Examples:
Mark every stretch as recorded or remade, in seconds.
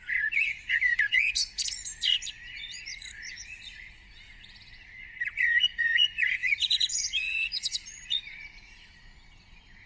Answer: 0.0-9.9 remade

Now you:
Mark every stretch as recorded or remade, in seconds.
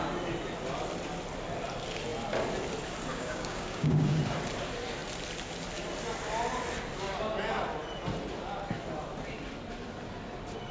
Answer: 0.0-3.1 recorded; 3.1-4.2 remade; 4.2-10.7 recorded